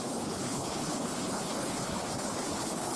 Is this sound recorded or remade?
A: remade